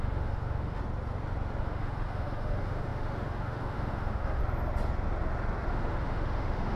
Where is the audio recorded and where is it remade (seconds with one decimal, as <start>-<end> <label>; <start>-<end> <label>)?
0.0-0.8 remade; 0.8-1.6 recorded; 1.6-4.4 remade; 4.4-5.7 recorded; 5.7-6.8 remade